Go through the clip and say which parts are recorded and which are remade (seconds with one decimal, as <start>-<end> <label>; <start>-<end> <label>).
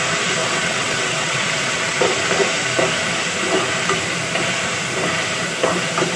0.0-0.4 recorded; 0.4-2.0 remade; 2.0-6.2 recorded